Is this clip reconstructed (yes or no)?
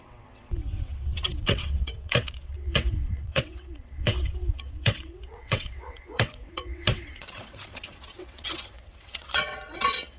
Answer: yes